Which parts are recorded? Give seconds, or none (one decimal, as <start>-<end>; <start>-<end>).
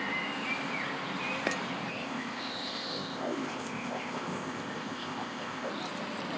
0.0-1.9; 5.7-6.4